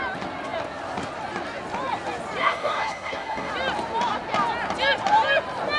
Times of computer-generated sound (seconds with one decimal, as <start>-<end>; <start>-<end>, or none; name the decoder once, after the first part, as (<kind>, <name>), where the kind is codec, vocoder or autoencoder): 2.4-3.5 (codec, SNAC)